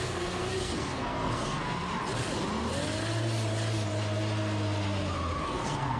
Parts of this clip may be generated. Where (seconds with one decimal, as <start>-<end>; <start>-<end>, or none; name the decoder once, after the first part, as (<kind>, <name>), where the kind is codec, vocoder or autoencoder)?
0.0-1.9 (codec, SNAC); 5.4-6.0

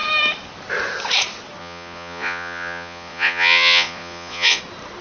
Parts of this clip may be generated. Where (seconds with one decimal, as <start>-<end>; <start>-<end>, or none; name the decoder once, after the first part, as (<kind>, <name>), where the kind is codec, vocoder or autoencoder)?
1.6-4.6 (vocoder, Vocos)

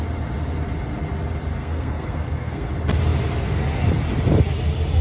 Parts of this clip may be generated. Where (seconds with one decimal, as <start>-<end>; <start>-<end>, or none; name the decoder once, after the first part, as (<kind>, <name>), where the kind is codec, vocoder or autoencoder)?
1.6-2.7 (codec, SNAC)

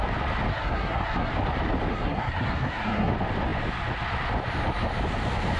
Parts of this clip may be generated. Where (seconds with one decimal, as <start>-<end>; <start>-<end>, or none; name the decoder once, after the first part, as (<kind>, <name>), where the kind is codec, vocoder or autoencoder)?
0.5-1.3 (codec, SNAC); 1.9-3.1